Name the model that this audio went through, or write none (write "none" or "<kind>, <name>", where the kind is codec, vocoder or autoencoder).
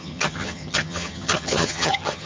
vocoder, HiFi-GAN